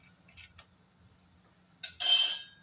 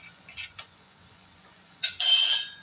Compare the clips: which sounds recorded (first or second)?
first